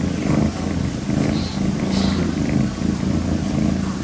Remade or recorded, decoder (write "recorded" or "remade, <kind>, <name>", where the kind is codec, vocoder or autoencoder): recorded